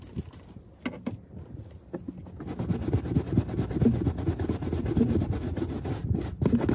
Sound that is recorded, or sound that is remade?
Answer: recorded